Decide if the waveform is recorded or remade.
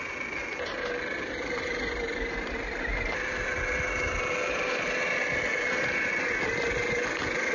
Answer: recorded